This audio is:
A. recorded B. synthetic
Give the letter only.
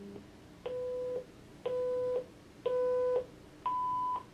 A